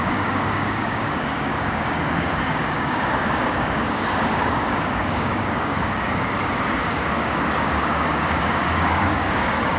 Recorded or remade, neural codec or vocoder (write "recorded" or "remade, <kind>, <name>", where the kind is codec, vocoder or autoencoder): remade, codec, DAC